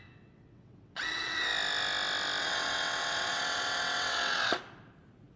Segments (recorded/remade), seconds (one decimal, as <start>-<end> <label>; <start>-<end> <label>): 0.0-1.5 remade; 1.5-2.4 recorded; 2.4-4.5 remade; 4.5-5.4 recorded